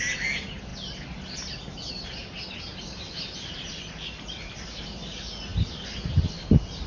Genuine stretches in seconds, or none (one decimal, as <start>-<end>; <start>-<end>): 0.0-6.9